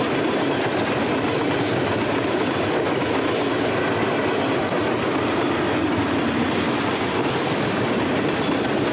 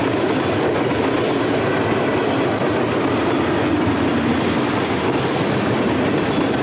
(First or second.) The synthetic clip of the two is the first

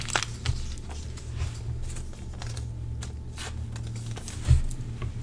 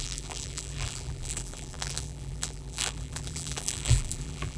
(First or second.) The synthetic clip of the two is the second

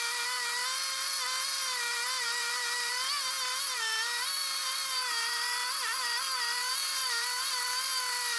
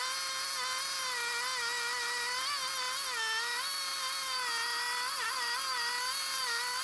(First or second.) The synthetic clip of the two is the first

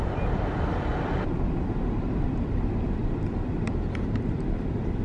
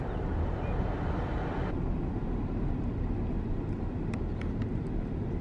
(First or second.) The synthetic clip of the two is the first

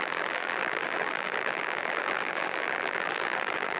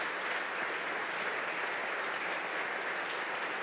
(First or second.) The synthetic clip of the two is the first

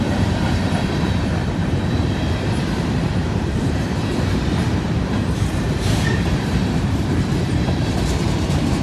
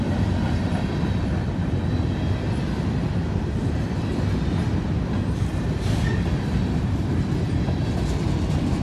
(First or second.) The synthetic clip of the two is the first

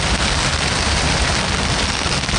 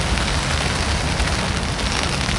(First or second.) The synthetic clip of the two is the first